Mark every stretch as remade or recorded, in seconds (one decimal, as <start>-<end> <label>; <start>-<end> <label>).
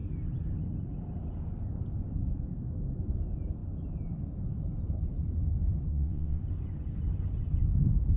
0.0-5.9 recorded; 5.9-6.4 remade; 6.4-8.2 recorded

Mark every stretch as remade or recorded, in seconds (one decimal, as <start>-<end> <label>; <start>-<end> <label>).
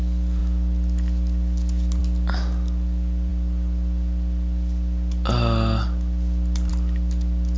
0.0-7.6 recorded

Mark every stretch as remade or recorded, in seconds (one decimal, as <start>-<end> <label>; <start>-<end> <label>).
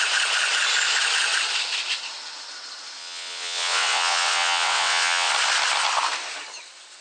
0.0-3.0 recorded; 3.0-5.3 remade; 5.3-7.0 recorded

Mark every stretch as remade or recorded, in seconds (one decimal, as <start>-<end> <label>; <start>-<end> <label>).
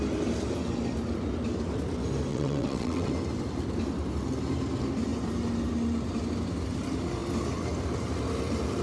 0.0-2.3 recorded; 2.3-3.1 remade; 3.1-8.8 recorded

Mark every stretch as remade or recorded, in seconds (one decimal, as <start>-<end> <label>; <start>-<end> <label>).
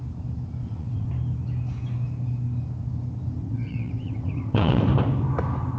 0.0-0.6 recorded; 0.6-1.1 remade; 1.1-3.4 recorded; 3.4-4.8 remade; 4.8-5.8 recorded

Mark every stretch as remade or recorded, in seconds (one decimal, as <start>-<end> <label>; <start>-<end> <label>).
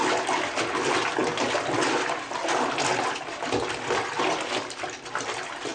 0.0-5.7 recorded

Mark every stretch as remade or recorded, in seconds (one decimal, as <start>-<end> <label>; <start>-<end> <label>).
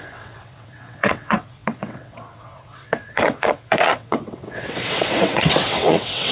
0.0-6.3 remade